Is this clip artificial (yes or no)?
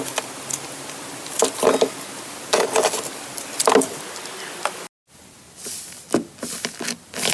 no